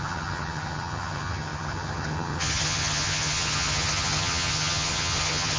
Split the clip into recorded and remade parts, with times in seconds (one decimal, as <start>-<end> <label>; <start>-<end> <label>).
0.0-5.6 remade